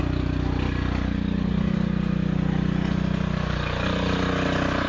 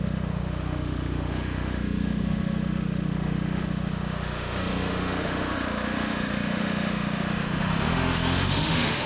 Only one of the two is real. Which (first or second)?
first